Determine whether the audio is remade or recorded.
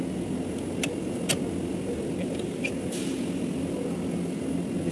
recorded